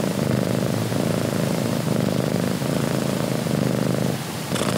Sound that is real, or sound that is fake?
real